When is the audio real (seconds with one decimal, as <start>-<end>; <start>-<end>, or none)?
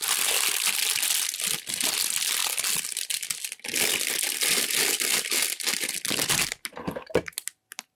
0.0-8.0